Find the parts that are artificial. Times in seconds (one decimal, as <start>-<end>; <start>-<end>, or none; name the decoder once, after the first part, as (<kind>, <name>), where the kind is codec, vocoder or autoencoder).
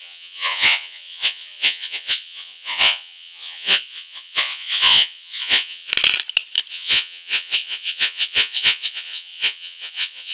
0.0-5.9 (vocoder, Vocos); 6.7-10.3